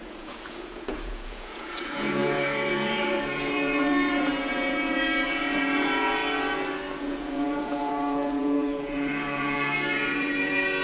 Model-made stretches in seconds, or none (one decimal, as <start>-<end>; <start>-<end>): 0.0-6.2; 7.0-10.8